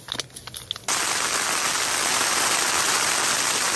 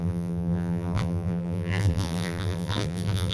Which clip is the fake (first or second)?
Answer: second